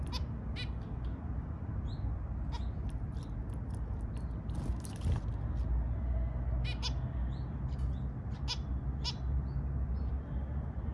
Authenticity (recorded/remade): recorded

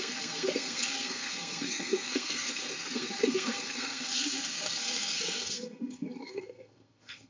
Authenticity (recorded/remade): remade